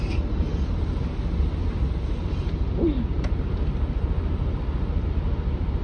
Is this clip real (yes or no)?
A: yes